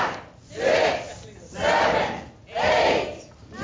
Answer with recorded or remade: recorded